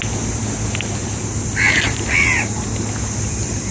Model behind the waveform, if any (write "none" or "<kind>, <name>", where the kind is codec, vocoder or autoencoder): none